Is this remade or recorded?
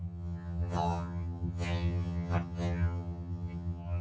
remade